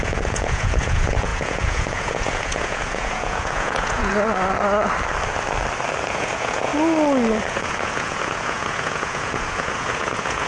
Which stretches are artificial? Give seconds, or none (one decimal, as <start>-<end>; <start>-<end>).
0.0-4.1; 6.0-6.7; 7.5-10.5